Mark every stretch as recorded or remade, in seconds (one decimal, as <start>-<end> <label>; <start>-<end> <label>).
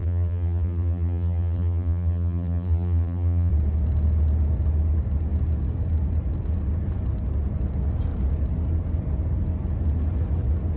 0.0-3.5 remade; 3.5-10.8 recorded